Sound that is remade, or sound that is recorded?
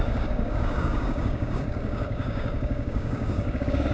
remade